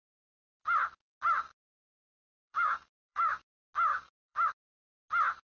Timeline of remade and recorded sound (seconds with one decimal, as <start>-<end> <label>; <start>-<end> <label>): 0.0-1.6 recorded; 1.6-3.4 remade; 3.4-3.9 recorded; 3.9-4.5 remade; 4.5-5.6 recorded